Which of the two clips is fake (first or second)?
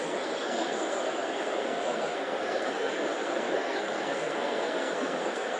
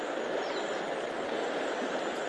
first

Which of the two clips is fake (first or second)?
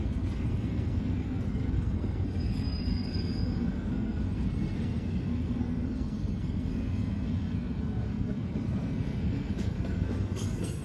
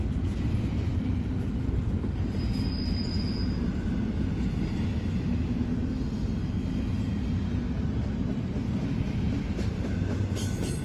first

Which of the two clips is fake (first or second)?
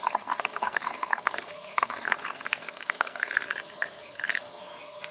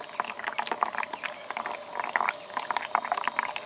first